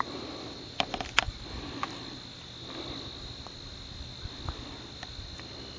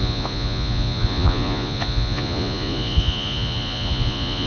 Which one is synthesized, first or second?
second